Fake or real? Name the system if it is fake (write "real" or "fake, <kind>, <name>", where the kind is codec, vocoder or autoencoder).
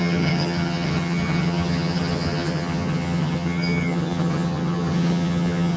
fake, vocoder, HiFi-GAN